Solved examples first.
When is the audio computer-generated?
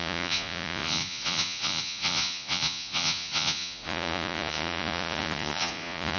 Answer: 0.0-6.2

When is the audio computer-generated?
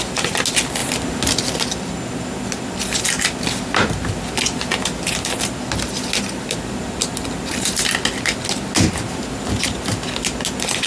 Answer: none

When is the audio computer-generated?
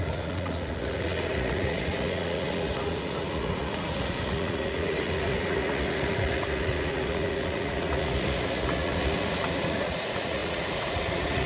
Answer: 0.0-11.5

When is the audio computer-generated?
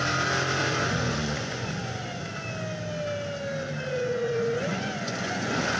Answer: 0.6-2.2; 3.9-5.8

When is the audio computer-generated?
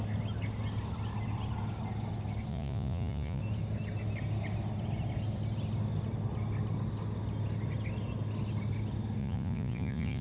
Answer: 2.5-3.4; 9.2-10.2